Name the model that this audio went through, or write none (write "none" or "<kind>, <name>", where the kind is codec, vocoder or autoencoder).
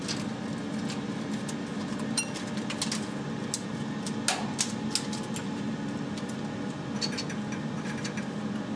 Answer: none